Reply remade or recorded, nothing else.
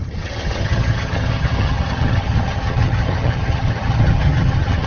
remade